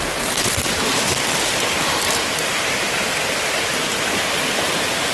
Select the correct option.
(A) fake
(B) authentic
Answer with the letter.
B